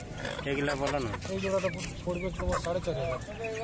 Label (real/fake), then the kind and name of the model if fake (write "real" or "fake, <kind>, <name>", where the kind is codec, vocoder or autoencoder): real